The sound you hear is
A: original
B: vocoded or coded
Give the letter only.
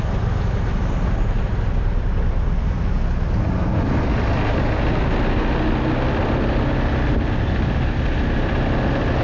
A